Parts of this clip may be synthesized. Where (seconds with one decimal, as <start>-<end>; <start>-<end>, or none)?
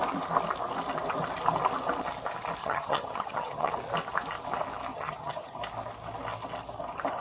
2.6-3.7; 4.9-5.6